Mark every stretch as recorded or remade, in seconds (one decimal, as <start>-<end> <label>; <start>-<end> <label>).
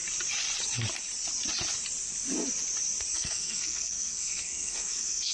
0.0-3.1 recorded; 3.1-5.3 remade